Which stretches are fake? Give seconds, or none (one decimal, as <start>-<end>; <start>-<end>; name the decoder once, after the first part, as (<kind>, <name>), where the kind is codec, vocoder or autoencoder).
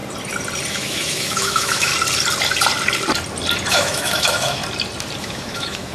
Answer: 0.7-1.9 (autoencoder, DAC-VAE); 3.7-4.6; 5.2-5.9